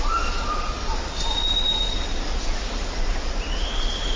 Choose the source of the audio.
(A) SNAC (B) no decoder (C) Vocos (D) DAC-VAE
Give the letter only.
B